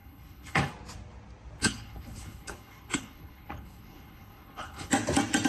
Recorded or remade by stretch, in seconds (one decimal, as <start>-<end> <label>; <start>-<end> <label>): 0.0-0.7 remade; 0.7-1.6 recorded; 1.6-4.9 remade; 4.9-5.5 recorded